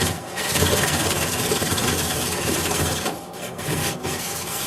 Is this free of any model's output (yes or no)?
no